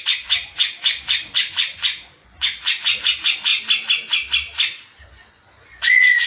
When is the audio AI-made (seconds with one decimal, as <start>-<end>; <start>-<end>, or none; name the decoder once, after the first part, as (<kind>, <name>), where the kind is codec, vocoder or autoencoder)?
0.0-3.5 (vocoder, Vocos); 5.0-6.3